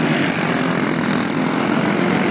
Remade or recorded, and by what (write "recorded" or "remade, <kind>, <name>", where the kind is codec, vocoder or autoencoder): recorded